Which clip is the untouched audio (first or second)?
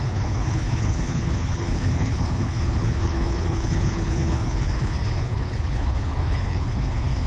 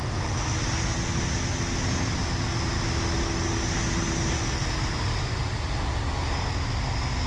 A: second